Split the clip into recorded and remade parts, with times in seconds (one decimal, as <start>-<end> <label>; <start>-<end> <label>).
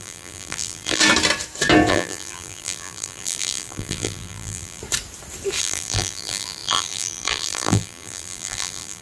0.0-1.0 remade; 1.0-1.9 recorded; 1.9-4.8 remade; 4.8-5.6 recorded; 5.6-9.0 remade